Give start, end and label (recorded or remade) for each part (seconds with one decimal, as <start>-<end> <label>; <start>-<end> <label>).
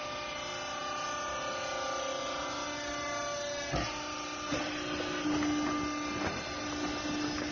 0.0-7.5 recorded